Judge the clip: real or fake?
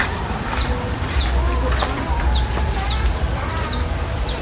real